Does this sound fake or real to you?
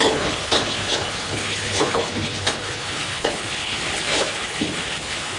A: fake